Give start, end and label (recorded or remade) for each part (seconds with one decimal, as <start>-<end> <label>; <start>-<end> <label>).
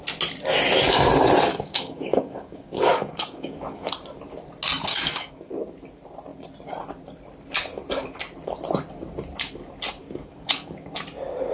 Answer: 0.0-1.5 recorded; 1.5-3.9 remade; 3.9-4.9 recorded; 4.9-5.5 remade; 5.5-10.0 recorded; 10.0-10.9 remade; 10.9-11.5 recorded